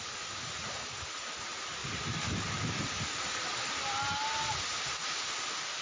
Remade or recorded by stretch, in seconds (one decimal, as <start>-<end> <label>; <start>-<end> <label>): 0.0-1.8 recorded; 1.8-3.0 remade; 3.0-5.8 recorded